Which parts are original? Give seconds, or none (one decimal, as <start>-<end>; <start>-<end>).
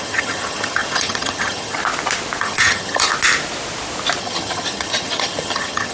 1.8-2.4; 3.1-4.2